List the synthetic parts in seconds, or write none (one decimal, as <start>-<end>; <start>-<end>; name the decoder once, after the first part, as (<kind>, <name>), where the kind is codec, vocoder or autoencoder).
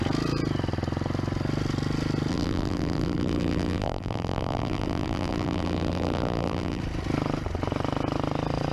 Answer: 2.3-6.8 (vocoder, BigVGAN v2)